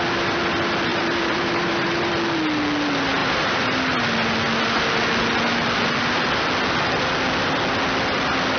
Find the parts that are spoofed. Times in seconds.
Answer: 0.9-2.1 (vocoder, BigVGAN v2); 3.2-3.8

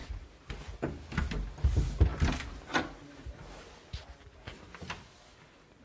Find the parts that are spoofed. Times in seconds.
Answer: 0.0-1.3 (vocoder, BigVGAN v2)

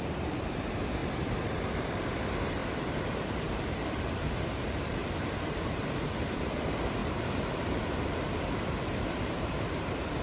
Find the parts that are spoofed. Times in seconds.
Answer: 0.0-5.0 (vocoder, BigVGAN v2); 5.7-10.2